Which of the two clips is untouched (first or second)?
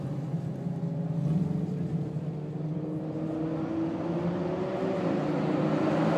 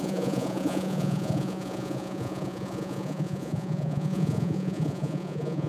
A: first